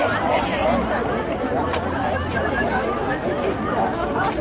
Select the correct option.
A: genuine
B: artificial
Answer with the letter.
A